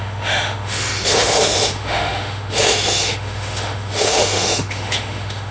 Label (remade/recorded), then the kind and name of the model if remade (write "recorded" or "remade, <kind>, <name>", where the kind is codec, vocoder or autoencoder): remade, autoencoder, DAC-VAE